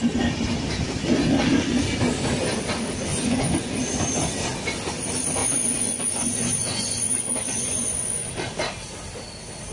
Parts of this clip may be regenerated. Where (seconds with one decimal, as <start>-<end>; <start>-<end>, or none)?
3.1-3.8; 5.4-8.3